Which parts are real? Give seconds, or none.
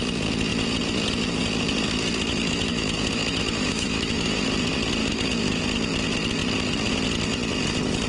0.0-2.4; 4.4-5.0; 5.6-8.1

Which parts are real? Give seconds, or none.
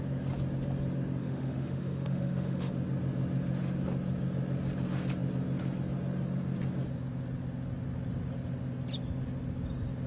0.0-1.2; 2.7-10.1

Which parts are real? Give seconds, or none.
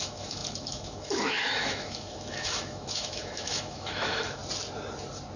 4.4-5.4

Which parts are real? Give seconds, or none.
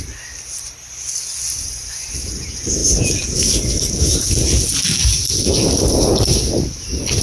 0.0-7.2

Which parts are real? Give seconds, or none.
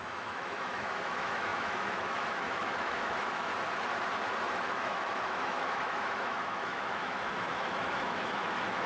3.5-4.5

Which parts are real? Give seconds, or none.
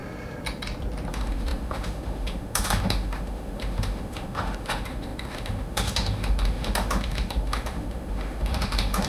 0.0-1.1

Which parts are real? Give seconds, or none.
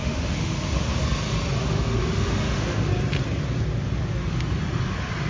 1.0-1.6; 2.9-5.3